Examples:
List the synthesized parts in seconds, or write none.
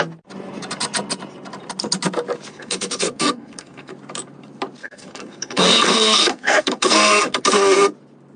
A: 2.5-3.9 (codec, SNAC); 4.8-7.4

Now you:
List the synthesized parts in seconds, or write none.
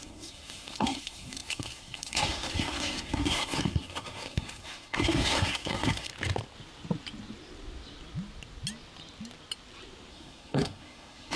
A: 0.0-6.1 (codec, SNAC); 10.1-11.4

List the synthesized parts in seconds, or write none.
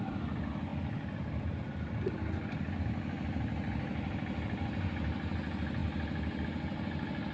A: none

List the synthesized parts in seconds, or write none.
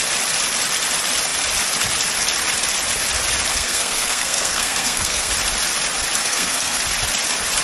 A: 3.5-5.3 (codec, SNAC); 6.2-6.8